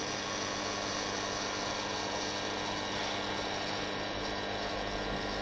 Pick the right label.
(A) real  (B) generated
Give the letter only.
A